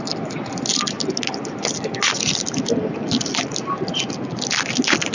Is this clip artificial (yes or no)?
no